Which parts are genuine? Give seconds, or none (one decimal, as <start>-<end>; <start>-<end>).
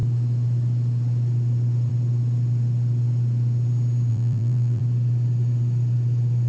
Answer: 0.0-4.1; 4.8-6.5